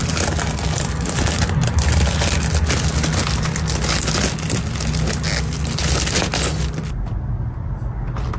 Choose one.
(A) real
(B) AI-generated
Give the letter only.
A